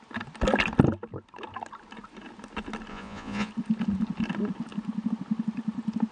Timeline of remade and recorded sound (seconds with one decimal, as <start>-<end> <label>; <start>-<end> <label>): 0.0-2.9 recorded; 2.9-3.5 remade; 3.5-6.1 recorded